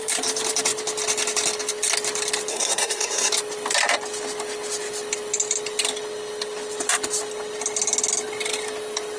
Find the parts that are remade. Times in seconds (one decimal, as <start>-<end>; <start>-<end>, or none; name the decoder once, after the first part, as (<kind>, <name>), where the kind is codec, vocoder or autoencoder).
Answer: 2.5-3.3 (codec, SNAC)